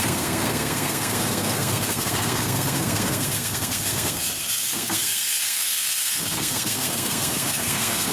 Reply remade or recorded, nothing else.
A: remade